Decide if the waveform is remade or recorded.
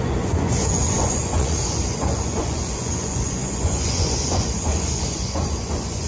remade